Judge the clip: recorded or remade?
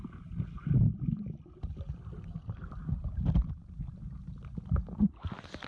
recorded